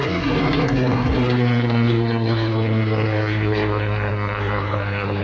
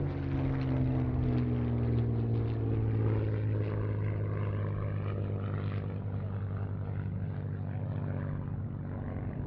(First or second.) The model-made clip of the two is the first